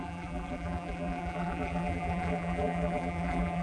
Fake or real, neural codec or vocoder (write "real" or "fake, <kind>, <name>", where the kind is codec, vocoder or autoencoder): fake, vocoder, BigVGAN v2